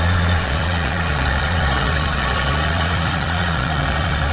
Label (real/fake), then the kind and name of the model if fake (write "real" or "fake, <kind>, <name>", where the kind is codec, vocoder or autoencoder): fake, vocoder, Vocos